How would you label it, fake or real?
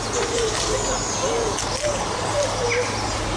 real